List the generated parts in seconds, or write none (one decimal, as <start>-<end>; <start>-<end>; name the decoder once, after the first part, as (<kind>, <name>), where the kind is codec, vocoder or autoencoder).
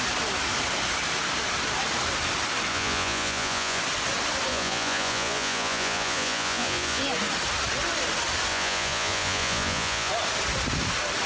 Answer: 2.7-3.8 (vocoder, Vocos); 4.5-7.0; 8.5-10.1